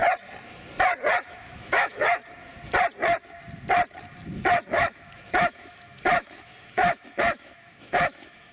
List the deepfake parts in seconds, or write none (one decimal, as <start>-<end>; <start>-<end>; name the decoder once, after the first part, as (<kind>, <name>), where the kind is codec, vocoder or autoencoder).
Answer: 1.2-2.2 (autoencoder, DAC-VAE); 4.7-8.5